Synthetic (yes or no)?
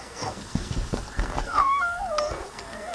yes